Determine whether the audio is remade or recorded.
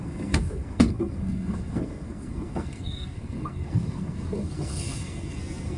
remade